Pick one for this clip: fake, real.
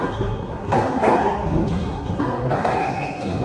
fake